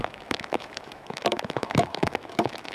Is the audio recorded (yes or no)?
no